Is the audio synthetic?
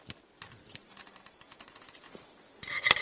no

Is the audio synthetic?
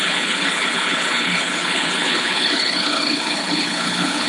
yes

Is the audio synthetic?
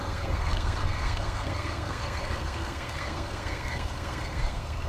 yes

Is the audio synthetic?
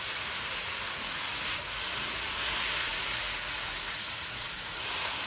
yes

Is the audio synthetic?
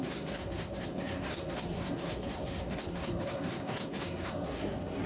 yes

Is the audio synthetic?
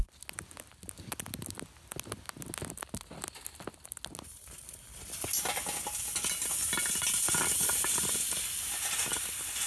no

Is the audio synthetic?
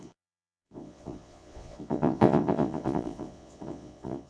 yes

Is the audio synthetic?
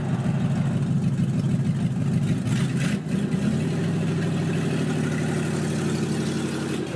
no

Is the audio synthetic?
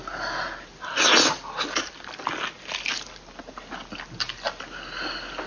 no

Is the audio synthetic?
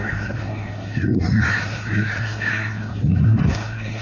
yes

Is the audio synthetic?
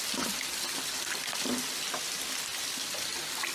no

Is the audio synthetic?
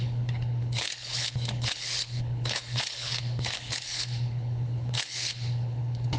yes